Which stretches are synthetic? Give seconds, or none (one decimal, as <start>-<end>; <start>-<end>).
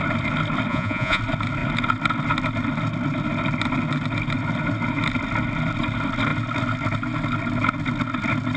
0.7-1.2